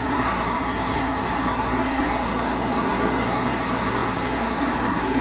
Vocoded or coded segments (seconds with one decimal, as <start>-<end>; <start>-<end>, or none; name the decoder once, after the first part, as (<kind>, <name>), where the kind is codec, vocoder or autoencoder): 0.0-5.2 (codec, SNAC)